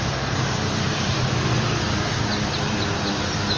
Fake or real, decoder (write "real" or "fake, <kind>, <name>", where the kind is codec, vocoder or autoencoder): fake, vocoder, BigVGAN v2